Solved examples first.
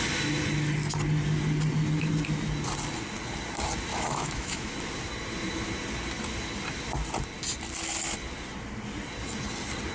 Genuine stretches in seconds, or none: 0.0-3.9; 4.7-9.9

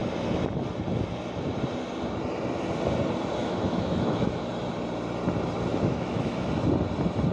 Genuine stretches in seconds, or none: 0.0-3.4; 4.5-5.7; 6.5-7.3

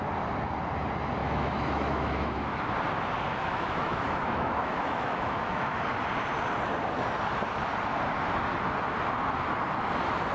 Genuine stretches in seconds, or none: 0.0-1.2; 2.6-3.4; 5.8-10.3

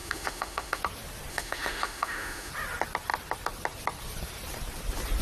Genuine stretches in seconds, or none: 0.8-1.3; 2.5-5.2

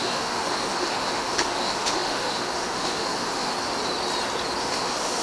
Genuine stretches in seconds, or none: 3.5-4.6

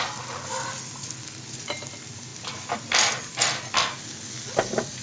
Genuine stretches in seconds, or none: 0.0-5.0